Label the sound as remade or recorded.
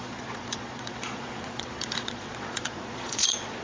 remade